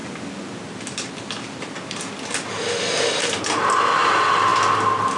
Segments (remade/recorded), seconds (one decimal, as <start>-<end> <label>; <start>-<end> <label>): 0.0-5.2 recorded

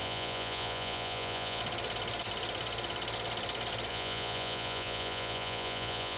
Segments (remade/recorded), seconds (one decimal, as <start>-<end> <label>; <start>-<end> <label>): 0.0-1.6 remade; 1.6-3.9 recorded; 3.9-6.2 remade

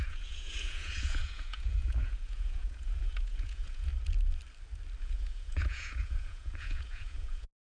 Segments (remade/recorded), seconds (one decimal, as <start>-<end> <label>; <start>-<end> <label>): 0.0-3.9 remade; 3.9-5.0 recorded; 5.0-7.6 remade

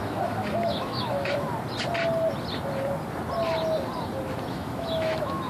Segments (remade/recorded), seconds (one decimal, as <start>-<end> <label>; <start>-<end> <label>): 0.0-1.5 remade; 1.5-4.5 recorded; 4.5-5.5 remade